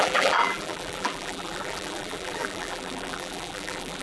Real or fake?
fake